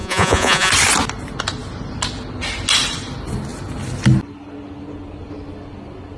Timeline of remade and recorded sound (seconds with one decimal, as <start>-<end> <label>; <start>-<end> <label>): 0.0-0.7 remade; 0.7-6.2 recorded